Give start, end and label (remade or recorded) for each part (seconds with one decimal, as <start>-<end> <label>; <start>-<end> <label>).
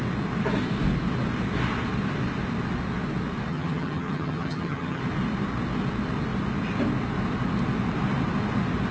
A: 0.0-3.5 recorded; 3.5-5.0 remade; 5.0-8.9 recorded